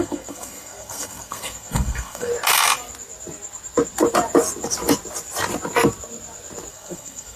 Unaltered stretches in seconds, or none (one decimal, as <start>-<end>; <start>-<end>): 2.3-6.7